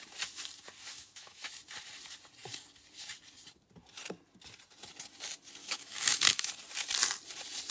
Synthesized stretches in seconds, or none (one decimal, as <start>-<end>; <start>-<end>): 0.9-1.5; 5.6-6.5